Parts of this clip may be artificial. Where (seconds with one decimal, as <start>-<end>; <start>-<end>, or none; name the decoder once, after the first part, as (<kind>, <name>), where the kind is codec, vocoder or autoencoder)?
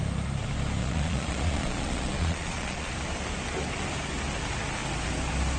0.8-2.9 (vocoder, Vocos)